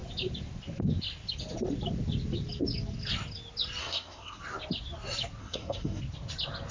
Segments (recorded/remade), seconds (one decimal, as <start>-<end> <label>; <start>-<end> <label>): 0.0-3.8 recorded; 3.8-4.4 remade; 4.4-5.4 recorded; 5.4-6.0 remade; 6.0-6.7 recorded